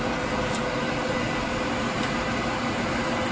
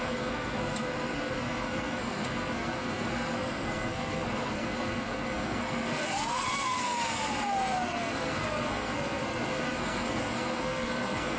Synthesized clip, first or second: second